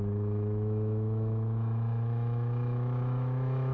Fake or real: fake